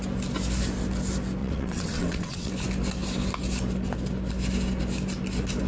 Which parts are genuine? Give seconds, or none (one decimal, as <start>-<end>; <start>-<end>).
0.0-1.4; 2.5-5.7